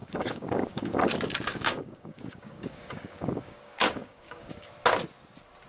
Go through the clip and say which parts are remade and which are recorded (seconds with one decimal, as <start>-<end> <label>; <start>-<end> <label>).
0.0-1.1 remade; 1.1-1.5 recorded; 1.5-4.7 remade; 4.7-5.7 recorded